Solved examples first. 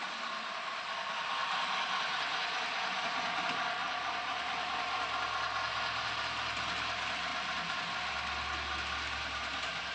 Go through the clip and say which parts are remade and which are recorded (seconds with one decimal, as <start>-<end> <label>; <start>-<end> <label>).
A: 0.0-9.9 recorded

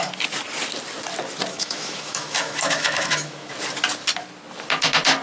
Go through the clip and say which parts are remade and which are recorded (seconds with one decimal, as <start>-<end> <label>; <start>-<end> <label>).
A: 0.0-1.5 recorded; 1.5-3.5 remade; 3.5-5.2 recorded

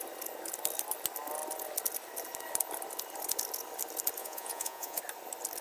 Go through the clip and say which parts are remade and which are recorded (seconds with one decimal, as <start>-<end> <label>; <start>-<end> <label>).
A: 0.0-4.2 recorded; 4.2-5.0 remade; 5.0-5.6 recorded